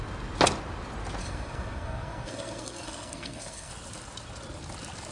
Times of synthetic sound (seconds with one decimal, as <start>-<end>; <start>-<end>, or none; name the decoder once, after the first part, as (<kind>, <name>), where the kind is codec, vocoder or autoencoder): 1.2-3.7 (codec, SNAC)